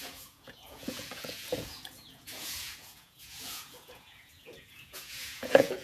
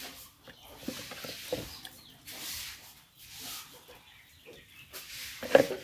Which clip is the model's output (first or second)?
first